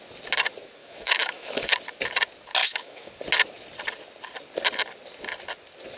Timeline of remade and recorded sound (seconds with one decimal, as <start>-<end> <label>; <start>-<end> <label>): 0.0-0.8 recorded; 0.8-1.7 remade; 1.7-2.6 recorded; 2.6-3.1 remade; 3.1-6.0 recorded